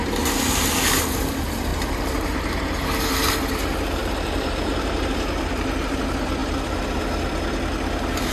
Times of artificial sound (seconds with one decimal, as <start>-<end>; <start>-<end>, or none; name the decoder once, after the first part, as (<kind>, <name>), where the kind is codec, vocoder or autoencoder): 1.7-2.5 (vocoder, BigVGAN v2); 4.0-6.0; 6.4-7.0